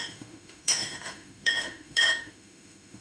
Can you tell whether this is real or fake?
fake